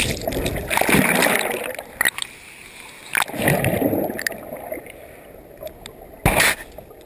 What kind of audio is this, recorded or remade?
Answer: recorded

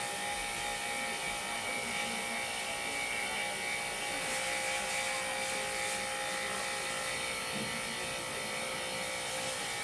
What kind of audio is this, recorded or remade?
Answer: recorded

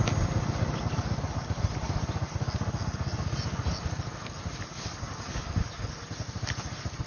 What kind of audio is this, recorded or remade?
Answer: recorded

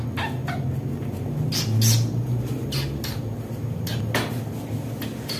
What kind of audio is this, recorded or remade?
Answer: recorded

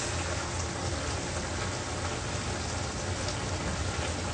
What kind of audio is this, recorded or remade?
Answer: recorded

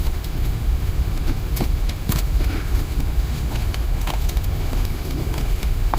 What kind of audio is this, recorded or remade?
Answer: remade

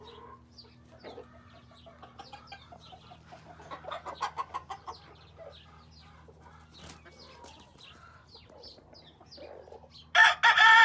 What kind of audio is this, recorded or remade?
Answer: recorded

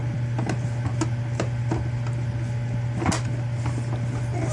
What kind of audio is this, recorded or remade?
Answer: recorded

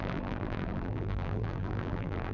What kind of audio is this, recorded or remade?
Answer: remade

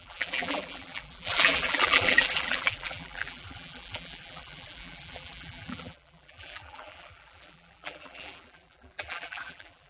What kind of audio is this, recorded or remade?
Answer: remade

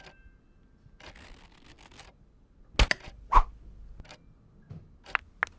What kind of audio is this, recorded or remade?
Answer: recorded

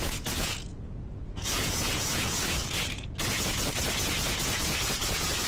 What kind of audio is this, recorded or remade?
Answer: remade